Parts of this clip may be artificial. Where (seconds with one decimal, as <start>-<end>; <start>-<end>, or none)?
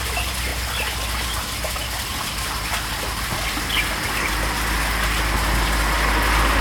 none